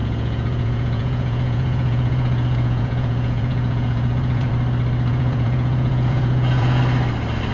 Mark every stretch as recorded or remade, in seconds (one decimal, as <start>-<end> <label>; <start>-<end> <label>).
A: 0.0-4.5 remade; 4.5-5.1 recorded; 5.1-6.8 remade; 6.8-7.5 recorded